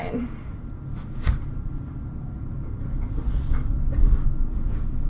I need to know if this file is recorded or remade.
recorded